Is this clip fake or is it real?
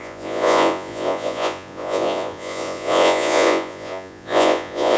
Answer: fake